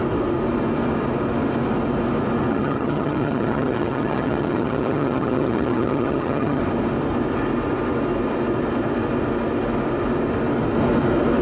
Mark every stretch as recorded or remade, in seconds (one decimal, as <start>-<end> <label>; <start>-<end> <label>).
0.0-2.5 recorded; 2.5-6.6 remade; 6.6-11.4 recorded